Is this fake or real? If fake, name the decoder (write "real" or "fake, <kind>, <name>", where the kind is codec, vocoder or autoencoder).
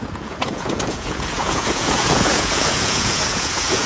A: fake, vocoder, Vocos